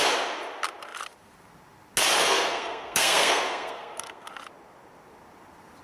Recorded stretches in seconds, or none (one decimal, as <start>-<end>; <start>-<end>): 0.0-2.2; 4.3-5.8